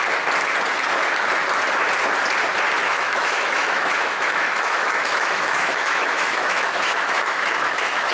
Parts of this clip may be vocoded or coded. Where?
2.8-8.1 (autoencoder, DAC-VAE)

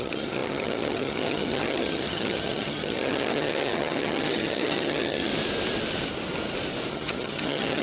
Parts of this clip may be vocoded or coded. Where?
0.0-5.3 (vocoder, HiFi-GAN); 6.9-7.8

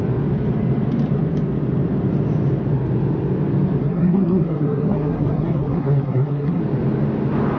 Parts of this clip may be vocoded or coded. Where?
3.8-6.6 (codec, SNAC)

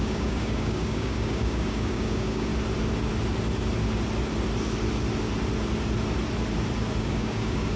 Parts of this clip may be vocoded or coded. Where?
0.0-2.5 (codec, DAC); 7.0-7.8

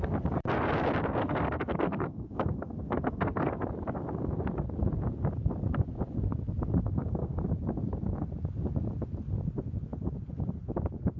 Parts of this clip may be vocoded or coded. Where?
1.2-3.5 (codec, SNAC); 6.8-7.4